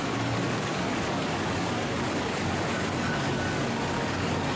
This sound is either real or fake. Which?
fake